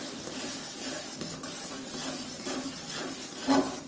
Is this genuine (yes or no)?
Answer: no